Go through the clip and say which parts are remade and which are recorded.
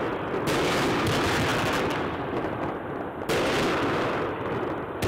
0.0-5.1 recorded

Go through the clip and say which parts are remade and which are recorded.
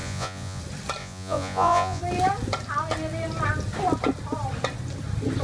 0.0-0.6 remade; 0.6-1.0 recorded; 1.0-2.0 remade; 2.0-5.4 recorded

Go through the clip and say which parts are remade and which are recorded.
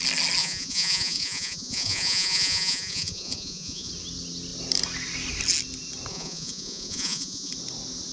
0.0-0.4 recorded; 0.4-3.9 remade; 3.9-6.1 recorded; 6.1-7.5 remade; 7.5-8.1 recorded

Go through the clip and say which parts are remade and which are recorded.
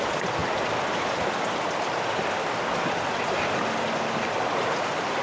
0.0-5.2 recorded